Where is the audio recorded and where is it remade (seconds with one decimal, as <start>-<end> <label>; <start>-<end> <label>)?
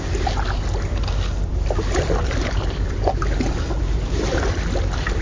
0.0-1.5 recorded; 1.5-4.6 remade; 4.6-5.2 recorded